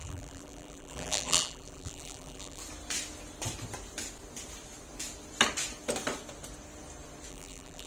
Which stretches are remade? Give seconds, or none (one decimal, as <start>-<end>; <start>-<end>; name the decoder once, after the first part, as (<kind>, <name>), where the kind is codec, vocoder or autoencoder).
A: 0.0-2.6 (vocoder, BigVGAN v2); 7.3-7.9